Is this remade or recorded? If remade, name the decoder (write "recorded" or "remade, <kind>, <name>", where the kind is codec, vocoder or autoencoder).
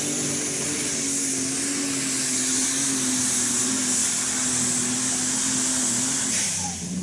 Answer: recorded